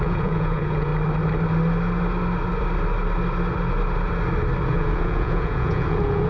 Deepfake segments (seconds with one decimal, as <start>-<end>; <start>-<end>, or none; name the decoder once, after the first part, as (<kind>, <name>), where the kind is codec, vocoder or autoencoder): 0.0-0.9 (vocoder, Vocos); 4.7-6.3